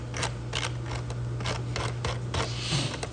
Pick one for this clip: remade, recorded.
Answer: recorded